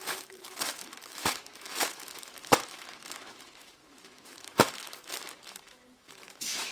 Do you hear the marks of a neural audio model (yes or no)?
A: yes